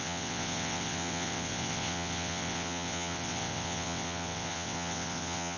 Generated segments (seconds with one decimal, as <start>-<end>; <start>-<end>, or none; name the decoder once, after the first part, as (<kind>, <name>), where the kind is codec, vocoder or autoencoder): 0.0-5.6 (vocoder, WaveNeXt)